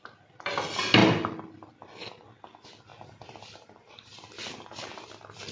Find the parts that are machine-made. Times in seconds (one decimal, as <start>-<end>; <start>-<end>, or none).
2.9-5.1